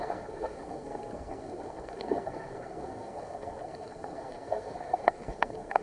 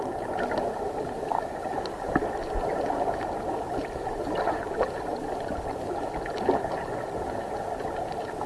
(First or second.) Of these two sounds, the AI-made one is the first